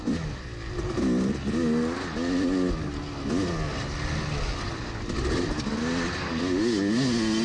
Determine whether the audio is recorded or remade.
recorded